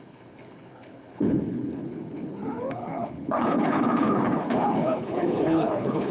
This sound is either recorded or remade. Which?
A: remade